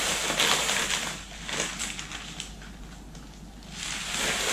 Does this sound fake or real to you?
fake